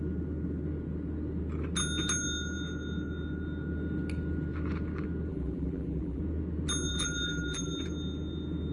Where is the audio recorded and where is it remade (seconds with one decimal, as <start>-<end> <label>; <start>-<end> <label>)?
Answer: 0.0-5.3 recorded; 5.3-6.2 remade; 6.2-6.9 recorded; 6.9-7.8 remade; 7.8-8.7 recorded